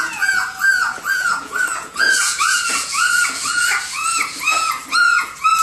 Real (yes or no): no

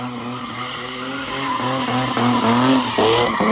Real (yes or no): yes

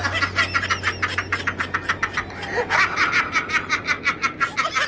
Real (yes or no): yes